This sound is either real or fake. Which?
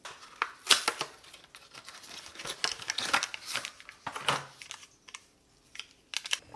real